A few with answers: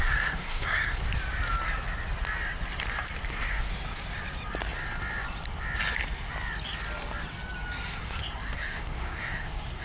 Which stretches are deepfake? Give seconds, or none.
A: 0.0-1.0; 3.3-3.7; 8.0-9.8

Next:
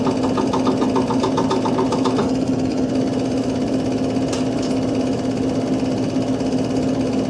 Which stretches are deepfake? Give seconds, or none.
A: 2.2-2.9

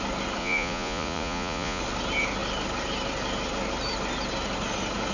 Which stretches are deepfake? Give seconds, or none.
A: 0.4-1.8

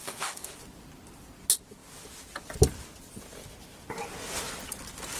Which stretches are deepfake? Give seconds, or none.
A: 0.0-0.5

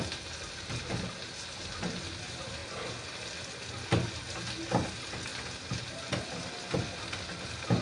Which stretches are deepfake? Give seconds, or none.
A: none